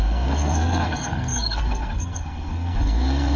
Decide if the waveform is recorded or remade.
remade